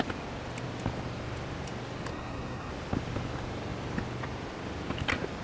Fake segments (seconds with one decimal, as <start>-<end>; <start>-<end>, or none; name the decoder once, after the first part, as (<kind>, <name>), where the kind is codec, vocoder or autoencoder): 2.1-2.7 (codec, SNAC)